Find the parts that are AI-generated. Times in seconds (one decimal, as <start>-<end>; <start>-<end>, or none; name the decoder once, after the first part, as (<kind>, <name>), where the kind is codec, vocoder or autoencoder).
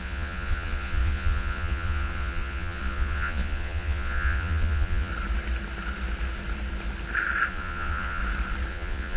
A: 0.0-5.1 (vocoder, Vocos); 7.5-8.2; 8.7-9.2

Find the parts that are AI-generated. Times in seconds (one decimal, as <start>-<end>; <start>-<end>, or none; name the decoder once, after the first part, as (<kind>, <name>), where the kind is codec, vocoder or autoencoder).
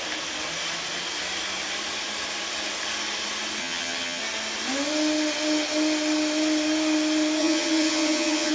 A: 3.6-4.2 (vocoder, HiFi-GAN); 7.4-8.5